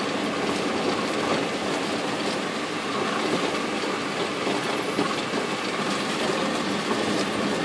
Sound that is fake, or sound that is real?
real